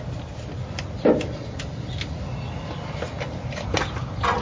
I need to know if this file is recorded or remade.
recorded